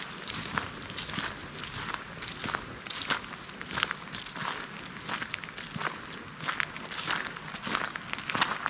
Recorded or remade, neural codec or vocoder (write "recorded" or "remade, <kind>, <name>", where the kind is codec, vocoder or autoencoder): recorded